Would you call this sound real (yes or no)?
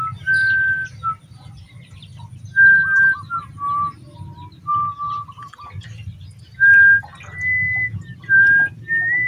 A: yes